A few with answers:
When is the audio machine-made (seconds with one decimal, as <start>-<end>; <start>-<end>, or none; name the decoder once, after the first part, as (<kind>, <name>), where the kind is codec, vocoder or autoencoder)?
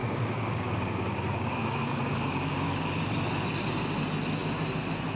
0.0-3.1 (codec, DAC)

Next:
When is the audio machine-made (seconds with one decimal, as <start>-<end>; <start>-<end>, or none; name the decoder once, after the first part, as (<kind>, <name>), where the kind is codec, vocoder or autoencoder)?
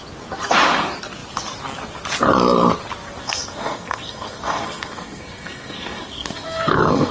3.2-7.1 (codec, SNAC)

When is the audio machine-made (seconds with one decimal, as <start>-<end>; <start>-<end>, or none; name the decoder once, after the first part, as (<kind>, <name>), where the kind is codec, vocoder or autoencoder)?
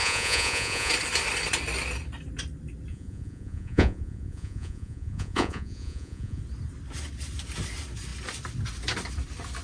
0.0-0.9 (vocoder, Vocos); 2.9-6.4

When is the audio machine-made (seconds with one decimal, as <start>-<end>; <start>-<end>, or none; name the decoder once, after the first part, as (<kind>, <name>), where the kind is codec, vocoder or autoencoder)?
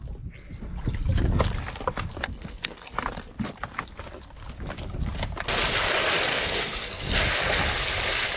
2.3-2.9 (codec, SNAC); 6.3-7.2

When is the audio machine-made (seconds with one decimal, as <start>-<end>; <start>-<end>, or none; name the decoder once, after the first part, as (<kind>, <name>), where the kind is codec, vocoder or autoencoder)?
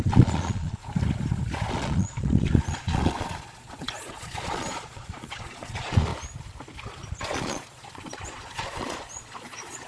0.0-0.8 (vocoder, Vocos); 1.7-6.1; 7.2-9.9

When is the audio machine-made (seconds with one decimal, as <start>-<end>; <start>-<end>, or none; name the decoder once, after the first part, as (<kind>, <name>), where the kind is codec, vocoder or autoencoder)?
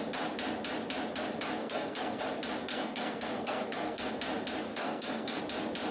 1.6-2.2 (codec, SNAC); 2.7-4.1; 4.7-5.4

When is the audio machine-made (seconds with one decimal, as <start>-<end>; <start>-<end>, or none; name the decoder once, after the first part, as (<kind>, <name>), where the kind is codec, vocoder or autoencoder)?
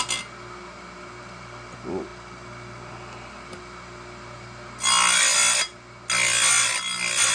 none